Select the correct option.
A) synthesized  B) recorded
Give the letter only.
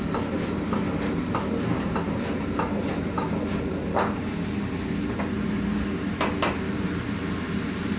B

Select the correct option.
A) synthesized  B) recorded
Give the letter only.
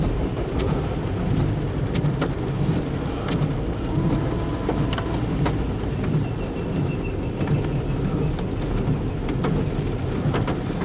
B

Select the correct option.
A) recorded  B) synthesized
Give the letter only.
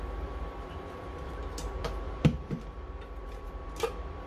B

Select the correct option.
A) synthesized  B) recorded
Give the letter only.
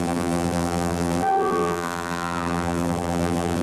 A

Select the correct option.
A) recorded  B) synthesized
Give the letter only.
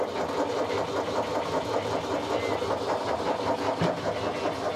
A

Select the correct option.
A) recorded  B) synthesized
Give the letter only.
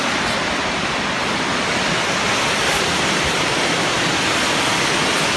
A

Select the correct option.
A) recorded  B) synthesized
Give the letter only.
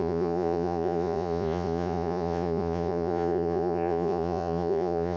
B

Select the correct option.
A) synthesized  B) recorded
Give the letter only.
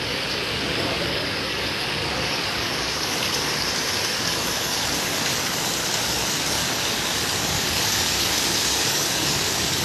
A